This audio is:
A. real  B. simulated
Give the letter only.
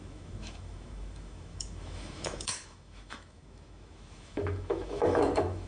B